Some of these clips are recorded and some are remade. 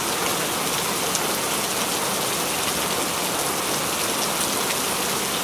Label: recorded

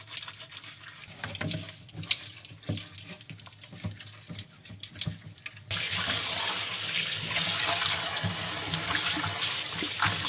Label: recorded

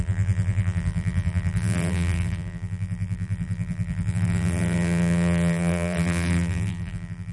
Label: remade